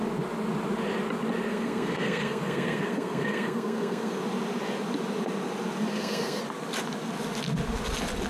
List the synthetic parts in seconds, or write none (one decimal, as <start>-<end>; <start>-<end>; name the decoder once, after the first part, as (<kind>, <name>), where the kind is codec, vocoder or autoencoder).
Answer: 1.5-4.2 (codec, SNAC); 5.9-6.4